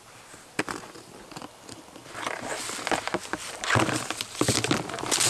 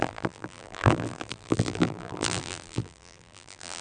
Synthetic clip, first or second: second